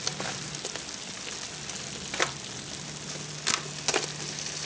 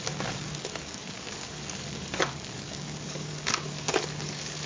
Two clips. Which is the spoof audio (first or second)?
second